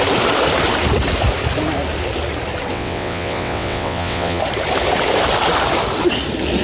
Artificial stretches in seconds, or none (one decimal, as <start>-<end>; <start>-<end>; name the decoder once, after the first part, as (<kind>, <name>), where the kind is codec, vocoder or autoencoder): 2.7-4.4 (vocoder, WaveNeXt)